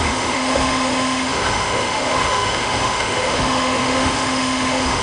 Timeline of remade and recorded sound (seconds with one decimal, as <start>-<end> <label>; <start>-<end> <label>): 0.0-5.0 remade

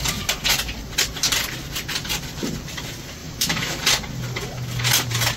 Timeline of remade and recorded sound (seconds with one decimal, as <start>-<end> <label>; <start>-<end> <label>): 0.0-3.2 recorded; 3.2-3.8 remade; 3.8-5.4 recorded

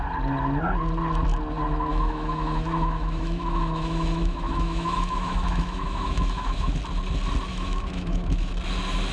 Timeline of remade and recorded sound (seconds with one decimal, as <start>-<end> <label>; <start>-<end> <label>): 0.0-1.9 recorded; 1.9-6.8 remade; 6.8-7.5 recorded; 7.5-8.5 remade; 8.5-9.1 recorded

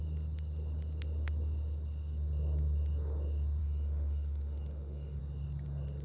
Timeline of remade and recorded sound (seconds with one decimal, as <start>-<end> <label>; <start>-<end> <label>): 0.0-3.6 recorded; 3.6-5.2 remade; 5.2-6.0 recorded

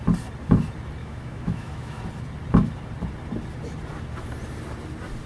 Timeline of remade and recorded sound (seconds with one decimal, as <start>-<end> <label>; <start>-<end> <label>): 0.0-1.0 recorded; 1.0-2.0 remade; 2.0-5.3 recorded

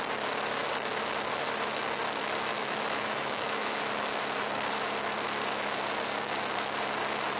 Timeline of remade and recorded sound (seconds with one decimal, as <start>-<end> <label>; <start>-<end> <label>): 0.0-2.5 recorded; 2.5-4.2 remade; 4.2-7.4 recorded

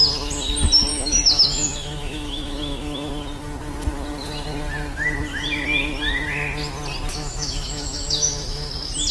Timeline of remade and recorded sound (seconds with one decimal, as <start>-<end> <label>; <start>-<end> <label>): 0.0-0.9 recorded; 0.9-3.1 remade; 3.1-7.1 recorded; 7.1-8.7 remade; 8.7-9.1 recorded

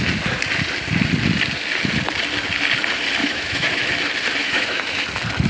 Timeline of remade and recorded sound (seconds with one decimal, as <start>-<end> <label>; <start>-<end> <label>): 0.0-3.2 recorded; 3.2-3.9 remade; 3.9-4.4 recorded; 4.4-5.0 remade; 5.0-5.5 recorded